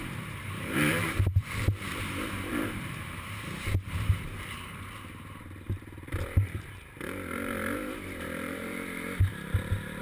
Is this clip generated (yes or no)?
yes